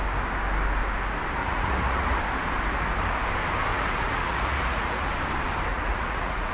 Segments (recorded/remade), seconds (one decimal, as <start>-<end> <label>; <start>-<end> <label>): 0.0-1.4 recorded; 1.4-2.2 remade; 2.2-3.7 recorded; 3.7-5.1 remade; 5.1-5.7 recorded; 5.7-6.5 remade